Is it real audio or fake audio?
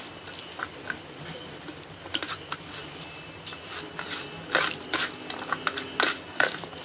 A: real